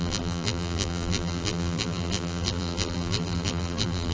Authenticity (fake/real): fake